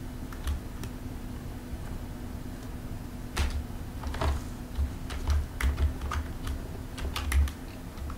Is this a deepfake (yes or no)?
no